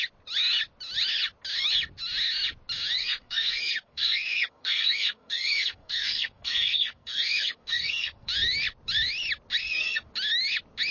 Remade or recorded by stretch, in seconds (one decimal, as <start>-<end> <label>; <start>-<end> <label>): 0.0-3.0 recorded; 3.0-8.3 remade; 8.3-9.6 recorded; 9.6-10.1 remade; 10.1-10.9 recorded